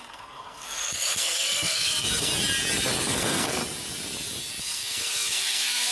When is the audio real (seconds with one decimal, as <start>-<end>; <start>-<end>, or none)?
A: 2.3-3.1; 3.6-4.6